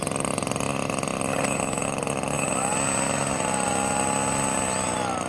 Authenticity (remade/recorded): recorded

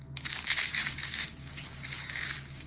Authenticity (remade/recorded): remade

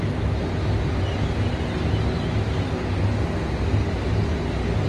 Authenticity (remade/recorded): recorded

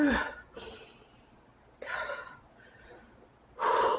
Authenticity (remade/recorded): recorded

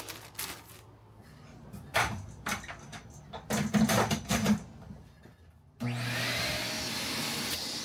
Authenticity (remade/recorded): recorded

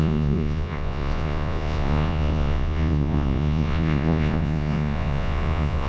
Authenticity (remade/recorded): remade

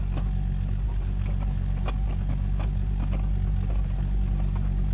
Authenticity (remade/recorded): recorded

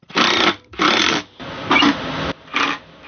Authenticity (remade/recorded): recorded